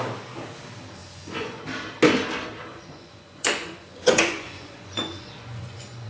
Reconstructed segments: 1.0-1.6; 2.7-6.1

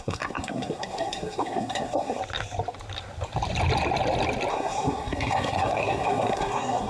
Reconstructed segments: 0.0-2.2; 4.5-6.9

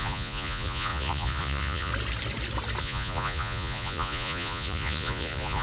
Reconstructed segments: 0.0-1.9; 2.8-5.6

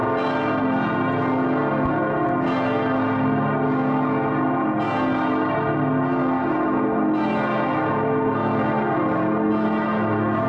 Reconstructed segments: none

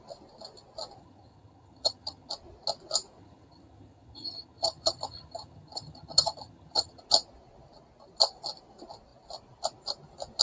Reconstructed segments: 1.0-2.3; 3.2-7.0

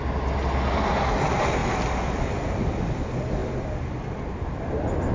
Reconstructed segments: none

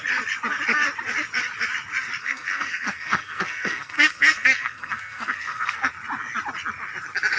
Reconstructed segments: 2.2-5.9

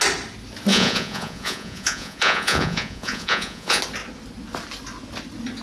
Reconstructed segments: 0.7-3.8